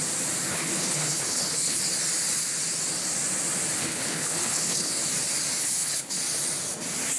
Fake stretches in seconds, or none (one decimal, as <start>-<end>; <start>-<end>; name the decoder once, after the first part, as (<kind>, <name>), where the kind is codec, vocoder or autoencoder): 0.5-1.8 (codec, HILCodec); 3.8-4.9; 5.6-6.2